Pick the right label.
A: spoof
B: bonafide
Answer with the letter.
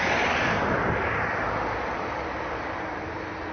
B